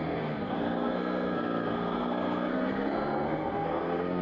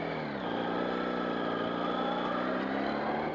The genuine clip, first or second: second